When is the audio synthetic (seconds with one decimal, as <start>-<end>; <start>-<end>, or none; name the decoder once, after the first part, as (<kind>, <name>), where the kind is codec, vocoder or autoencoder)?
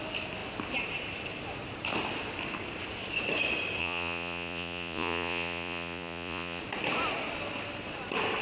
3.8-6.6 (vocoder, Vocos)